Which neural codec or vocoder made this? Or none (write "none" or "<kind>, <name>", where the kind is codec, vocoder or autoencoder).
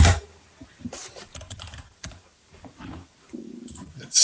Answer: vocoder, BigVGAN v2